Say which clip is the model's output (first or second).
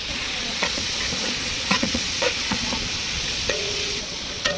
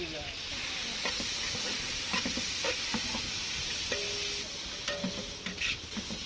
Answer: first